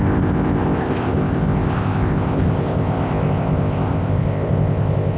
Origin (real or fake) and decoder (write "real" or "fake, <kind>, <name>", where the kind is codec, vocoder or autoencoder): fake, codec, ZipCodec